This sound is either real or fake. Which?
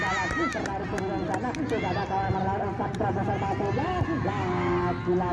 real